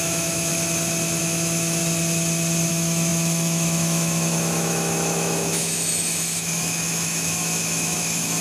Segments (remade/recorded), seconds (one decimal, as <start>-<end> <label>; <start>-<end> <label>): 0.0-0.5 remade; 0.5-1.2 recorded; 1.2-1.8 remade; 1.8-2.7 recorded; 2.7-8.4 remade